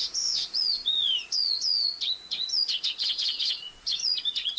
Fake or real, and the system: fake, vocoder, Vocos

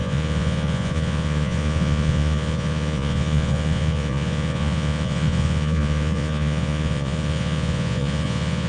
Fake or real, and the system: fake, vocoder, Vocos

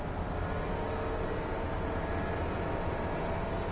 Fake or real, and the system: real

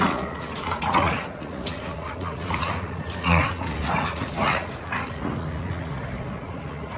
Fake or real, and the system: fake, vocoder, Vocos